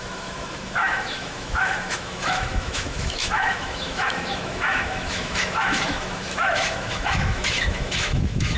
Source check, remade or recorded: remade